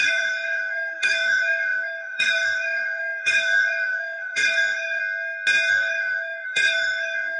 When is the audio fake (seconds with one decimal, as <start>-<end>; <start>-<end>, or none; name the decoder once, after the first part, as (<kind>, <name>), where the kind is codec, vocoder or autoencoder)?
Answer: 0.0-5.0 (codec, SNAC); 5.7-7.4